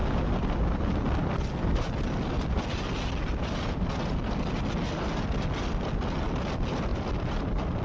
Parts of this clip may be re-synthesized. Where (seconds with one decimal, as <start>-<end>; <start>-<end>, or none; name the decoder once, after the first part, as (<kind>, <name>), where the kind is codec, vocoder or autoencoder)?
6.9-7.8 (vocoder, BigVGAN v2)